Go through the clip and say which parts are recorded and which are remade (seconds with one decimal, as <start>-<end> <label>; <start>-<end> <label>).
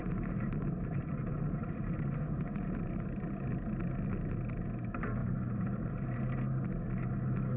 0.0-3.5 remade; 3.5-5.2 recorded; 5.2-6.2 remade; 6.2-7.6 recorded